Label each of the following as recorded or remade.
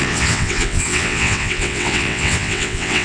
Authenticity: remade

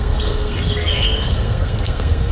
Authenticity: remade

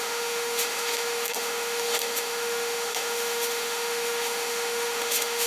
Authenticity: remade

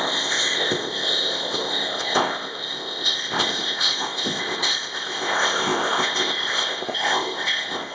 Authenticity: remade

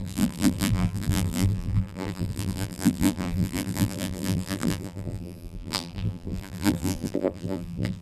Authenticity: remade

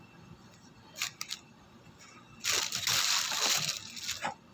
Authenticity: recorded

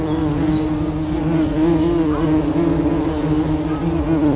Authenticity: recorded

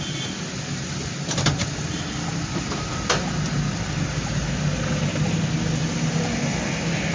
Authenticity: recorded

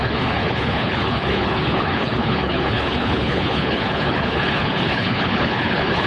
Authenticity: remade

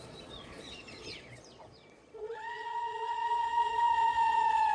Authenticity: remade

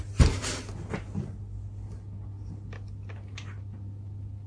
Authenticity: recorded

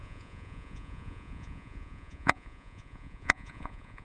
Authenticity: remade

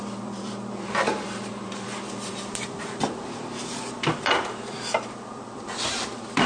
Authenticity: remade